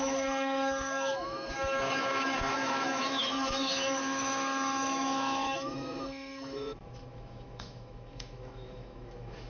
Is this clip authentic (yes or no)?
no